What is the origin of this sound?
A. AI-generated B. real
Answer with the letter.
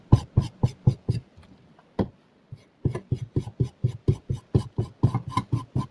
B